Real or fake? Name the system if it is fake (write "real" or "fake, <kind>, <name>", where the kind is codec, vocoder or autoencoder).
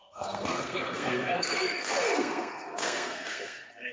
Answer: fake, codec, SNAC